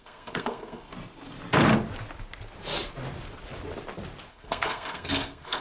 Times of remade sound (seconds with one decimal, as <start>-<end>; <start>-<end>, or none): 0.0-0.9; 4.3-5.6